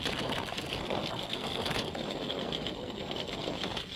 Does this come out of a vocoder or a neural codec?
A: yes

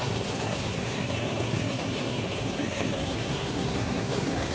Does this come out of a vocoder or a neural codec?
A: yes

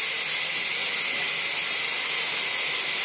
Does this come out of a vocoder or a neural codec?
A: no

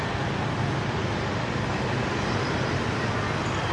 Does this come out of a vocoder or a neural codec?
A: no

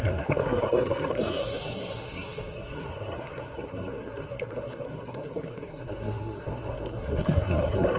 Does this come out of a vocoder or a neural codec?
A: yes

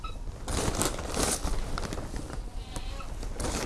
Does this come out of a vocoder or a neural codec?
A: no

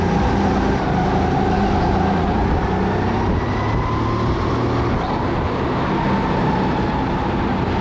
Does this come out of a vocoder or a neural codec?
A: no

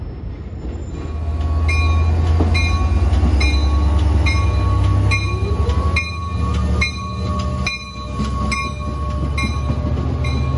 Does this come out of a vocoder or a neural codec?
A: no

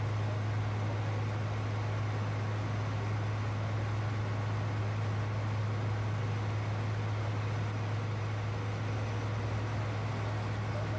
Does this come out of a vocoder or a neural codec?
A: no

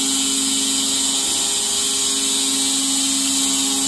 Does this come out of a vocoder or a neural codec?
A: no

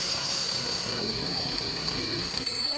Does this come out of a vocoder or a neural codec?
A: yes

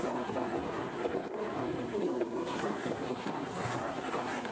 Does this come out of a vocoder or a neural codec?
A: yes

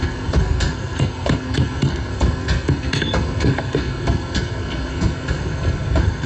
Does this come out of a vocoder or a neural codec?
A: yes